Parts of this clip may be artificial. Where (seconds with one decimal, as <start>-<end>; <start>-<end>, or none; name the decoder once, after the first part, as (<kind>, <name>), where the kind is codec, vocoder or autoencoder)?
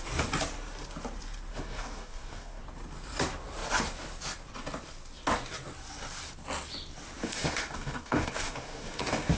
1.5-2.6 (codec, DAC); 7.2-9.4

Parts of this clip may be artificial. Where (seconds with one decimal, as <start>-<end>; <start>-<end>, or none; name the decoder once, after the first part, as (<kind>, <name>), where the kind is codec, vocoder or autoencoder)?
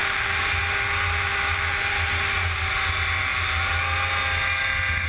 none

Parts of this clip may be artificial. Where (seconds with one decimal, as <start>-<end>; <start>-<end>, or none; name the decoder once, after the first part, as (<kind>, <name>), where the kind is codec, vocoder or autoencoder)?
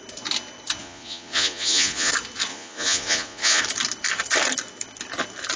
0.8-2.1 (vocoder, Vocos); 2.5-3.6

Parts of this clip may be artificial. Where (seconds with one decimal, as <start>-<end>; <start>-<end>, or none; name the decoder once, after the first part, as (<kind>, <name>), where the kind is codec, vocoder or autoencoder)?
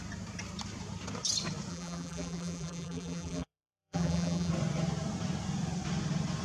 1.7-4.5 (vocoder, BigVGAN v2)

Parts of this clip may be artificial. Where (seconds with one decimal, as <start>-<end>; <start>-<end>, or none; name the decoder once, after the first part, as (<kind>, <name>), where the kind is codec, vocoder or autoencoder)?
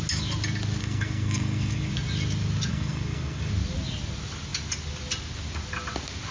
0.8-1.9 (codec, SNAC); 2.7-3.5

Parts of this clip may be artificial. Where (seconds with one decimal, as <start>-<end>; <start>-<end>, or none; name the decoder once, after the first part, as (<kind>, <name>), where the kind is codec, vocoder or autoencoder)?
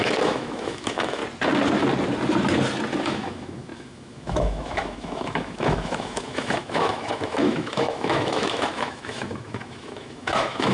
0.0-1.2 (autoencoder, DAC-VAE); 3.0-10.7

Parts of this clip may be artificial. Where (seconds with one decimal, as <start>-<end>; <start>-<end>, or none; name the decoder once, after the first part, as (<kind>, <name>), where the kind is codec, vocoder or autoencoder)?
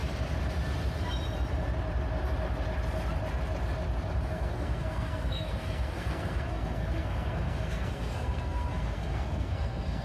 4.3-10.0 (codec, SNAC)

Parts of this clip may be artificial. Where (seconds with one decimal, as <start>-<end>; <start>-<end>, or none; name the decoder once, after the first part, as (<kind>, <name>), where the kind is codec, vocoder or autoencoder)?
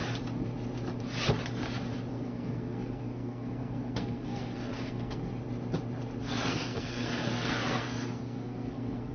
2.1-5.3 (codec, SNAC); 6.2-9.1